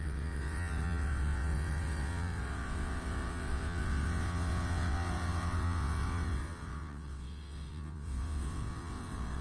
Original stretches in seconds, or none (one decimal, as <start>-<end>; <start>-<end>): none